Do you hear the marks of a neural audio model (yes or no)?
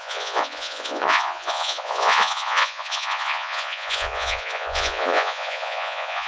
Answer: yes